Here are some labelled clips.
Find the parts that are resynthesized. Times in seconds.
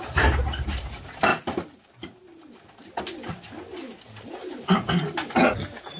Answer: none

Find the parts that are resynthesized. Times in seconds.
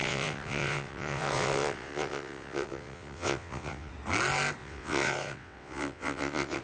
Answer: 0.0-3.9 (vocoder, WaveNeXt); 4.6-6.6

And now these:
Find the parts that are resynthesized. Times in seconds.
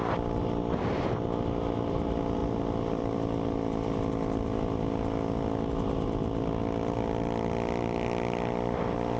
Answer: none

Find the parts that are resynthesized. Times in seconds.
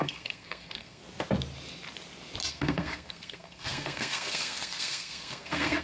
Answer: 0.0-1.0 (codec, SNAC); 2.5-5.8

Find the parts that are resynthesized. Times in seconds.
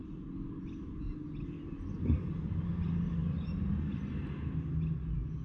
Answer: none